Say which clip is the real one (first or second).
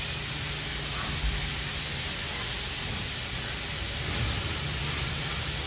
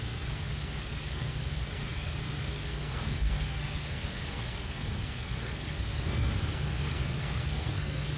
first